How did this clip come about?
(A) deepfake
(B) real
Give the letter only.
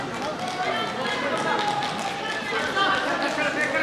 B